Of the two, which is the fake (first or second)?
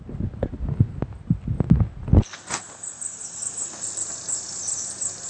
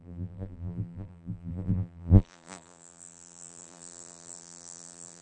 second